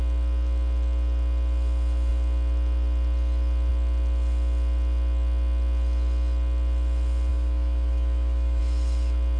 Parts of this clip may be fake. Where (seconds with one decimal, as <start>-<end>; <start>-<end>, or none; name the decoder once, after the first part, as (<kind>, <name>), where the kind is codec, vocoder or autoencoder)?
7.3-8.6 (autoencoder, DAC-VAE)